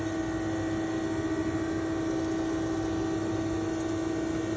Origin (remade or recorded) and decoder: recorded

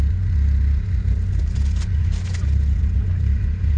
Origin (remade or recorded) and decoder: recorded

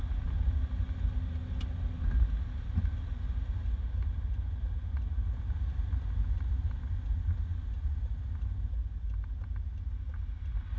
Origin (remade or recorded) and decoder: recorded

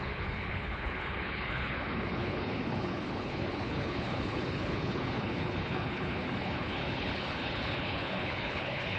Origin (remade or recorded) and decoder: remade, codec, HILCodec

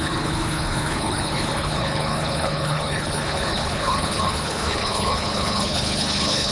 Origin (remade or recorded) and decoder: remade, codec, HILCodec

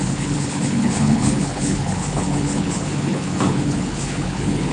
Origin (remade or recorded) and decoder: remade, codec, HILCodec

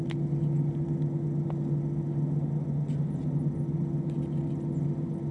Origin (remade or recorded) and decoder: recorded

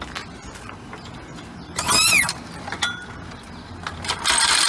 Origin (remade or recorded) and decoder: recorded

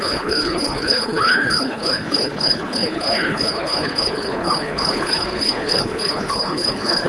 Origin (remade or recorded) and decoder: remade, codec, HILCodec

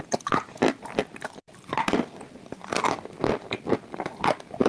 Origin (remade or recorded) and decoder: recorded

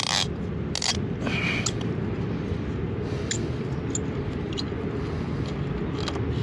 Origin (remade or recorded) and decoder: recorded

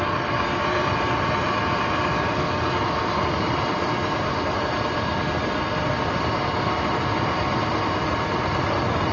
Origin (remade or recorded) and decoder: recorded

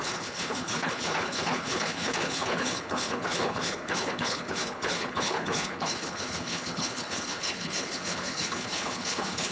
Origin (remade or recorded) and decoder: remade, codec, HILCodec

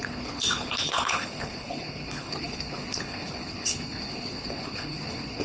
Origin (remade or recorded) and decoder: remade, codec, HILCodec